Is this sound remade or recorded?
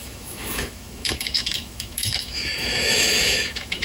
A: remade